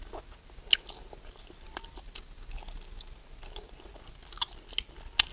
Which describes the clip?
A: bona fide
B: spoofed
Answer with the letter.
A